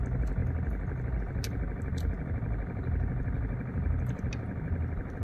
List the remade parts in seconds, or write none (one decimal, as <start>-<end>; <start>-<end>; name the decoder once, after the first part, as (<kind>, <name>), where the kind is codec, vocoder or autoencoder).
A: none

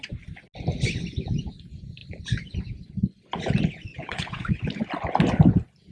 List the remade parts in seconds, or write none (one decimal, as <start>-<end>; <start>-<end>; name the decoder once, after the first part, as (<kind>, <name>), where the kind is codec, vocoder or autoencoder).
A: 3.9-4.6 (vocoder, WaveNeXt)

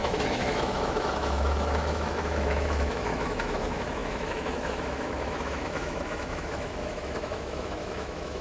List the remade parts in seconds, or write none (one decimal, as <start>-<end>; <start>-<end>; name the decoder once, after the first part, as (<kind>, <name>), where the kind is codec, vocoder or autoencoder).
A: 0.0-8.4 (autoencoder, DAC-VAE)

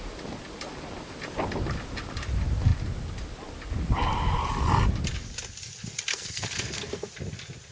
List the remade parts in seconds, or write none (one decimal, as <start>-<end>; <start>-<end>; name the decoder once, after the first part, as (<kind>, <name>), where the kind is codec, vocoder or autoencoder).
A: 6.1-7.1 (codec, SNAC)